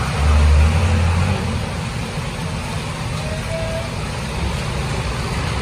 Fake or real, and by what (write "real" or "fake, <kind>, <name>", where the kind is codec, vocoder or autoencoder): real